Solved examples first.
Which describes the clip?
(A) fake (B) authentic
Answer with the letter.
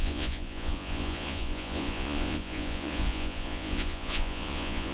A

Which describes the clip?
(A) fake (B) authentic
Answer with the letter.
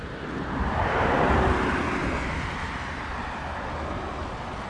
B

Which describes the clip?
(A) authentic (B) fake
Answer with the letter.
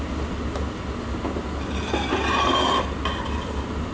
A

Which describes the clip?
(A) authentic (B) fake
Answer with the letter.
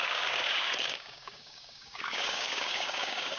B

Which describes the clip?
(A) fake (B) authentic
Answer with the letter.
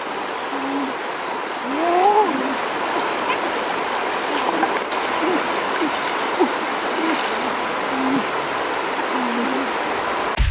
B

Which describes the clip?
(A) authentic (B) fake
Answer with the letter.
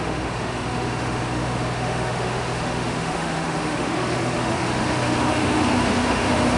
B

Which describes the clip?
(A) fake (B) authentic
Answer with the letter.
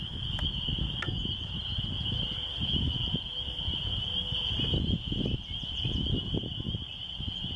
B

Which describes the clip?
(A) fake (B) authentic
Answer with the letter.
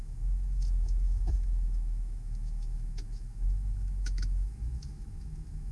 A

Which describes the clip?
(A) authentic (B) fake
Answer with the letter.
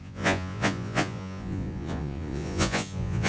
B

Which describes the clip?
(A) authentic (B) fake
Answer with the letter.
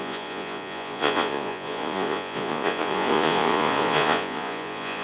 B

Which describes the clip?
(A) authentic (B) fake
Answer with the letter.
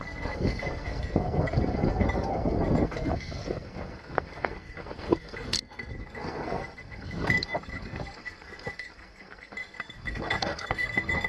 B